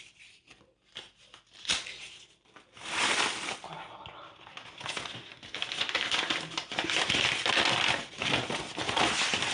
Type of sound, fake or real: real